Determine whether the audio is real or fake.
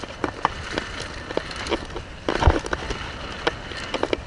real